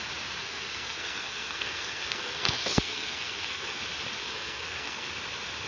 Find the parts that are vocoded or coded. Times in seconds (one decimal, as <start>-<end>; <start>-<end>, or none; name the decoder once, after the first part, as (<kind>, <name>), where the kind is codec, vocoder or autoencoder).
0.4-3.8 (codec, SNAC); 4.2-5.1